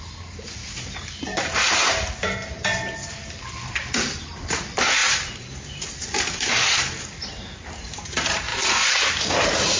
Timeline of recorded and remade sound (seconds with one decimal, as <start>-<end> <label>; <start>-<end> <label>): 0.0-9.8 remade